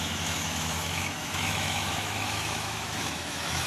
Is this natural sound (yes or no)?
no